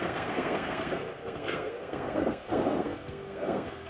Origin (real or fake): fake